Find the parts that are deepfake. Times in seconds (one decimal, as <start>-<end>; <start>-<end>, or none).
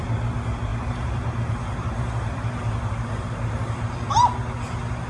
0.7-3.8